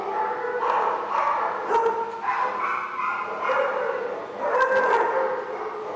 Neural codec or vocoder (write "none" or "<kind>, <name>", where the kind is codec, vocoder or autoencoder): none